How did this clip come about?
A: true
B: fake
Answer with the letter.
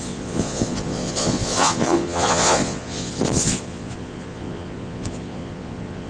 B